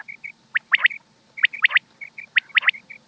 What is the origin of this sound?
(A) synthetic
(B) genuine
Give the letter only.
B